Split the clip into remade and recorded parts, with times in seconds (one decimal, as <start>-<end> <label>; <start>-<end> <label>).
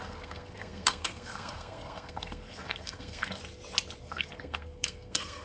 0.0-3.4 remade; 3.4-4.0 recorded; 4.0-5.4 remade